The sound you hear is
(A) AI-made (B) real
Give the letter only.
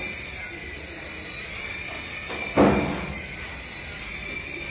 B